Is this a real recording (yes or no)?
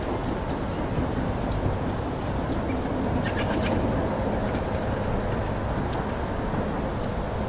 yes